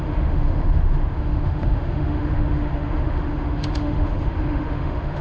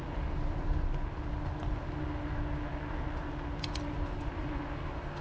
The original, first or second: second